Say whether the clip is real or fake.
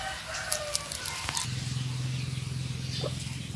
real